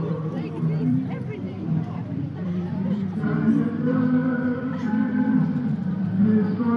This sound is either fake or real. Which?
fake